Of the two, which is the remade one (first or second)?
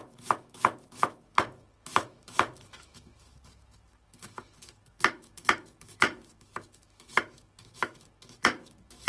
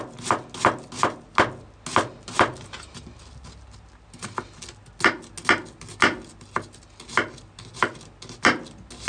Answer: first